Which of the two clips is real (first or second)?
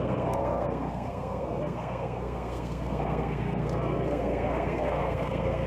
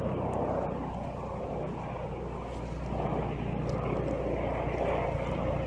second